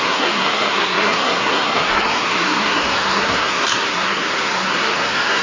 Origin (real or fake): fake